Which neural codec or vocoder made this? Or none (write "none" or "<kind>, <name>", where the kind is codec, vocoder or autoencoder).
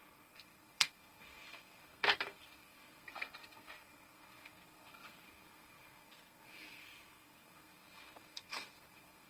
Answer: codec, SNAC